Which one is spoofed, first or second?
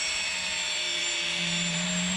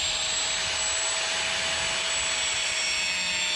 first